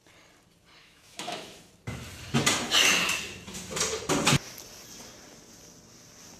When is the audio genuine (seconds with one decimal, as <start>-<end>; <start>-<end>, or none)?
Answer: 0.0-0.8; 1.7-6.4